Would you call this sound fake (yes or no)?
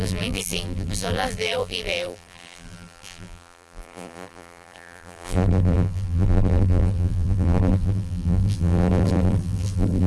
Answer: yes